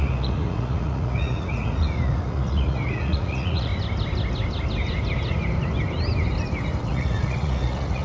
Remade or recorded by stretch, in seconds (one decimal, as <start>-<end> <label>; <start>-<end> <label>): 0.0-3.7 remade; 3.7-6.8 recorded; 6.8-8.0 remade